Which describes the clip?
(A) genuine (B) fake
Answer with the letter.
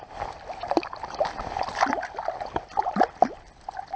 A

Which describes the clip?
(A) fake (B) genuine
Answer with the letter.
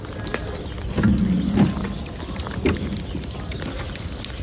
B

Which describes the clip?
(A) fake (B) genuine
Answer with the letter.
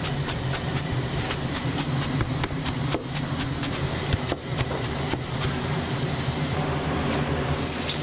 A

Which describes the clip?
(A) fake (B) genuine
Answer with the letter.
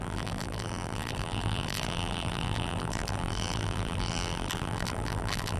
A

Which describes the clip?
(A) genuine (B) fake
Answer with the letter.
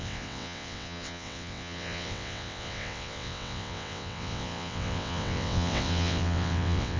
B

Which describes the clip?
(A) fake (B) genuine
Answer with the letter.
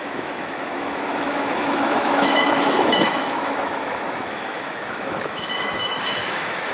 A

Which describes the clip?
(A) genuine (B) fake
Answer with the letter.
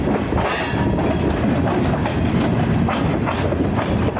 A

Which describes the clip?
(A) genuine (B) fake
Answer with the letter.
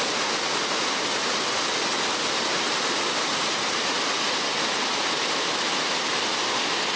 A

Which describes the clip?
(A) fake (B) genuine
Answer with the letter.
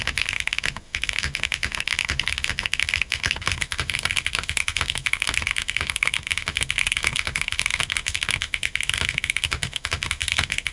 A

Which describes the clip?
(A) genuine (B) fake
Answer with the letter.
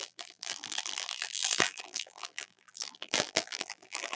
B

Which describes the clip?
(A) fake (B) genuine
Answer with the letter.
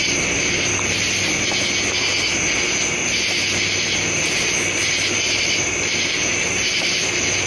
B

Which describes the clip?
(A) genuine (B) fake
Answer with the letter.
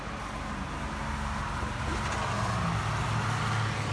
A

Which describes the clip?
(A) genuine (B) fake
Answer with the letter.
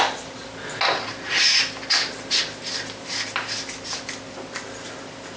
A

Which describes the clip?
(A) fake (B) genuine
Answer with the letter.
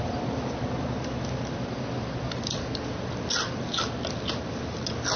B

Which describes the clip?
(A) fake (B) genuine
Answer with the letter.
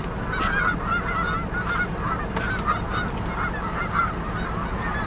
B